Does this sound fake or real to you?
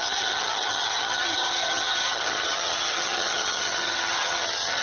fake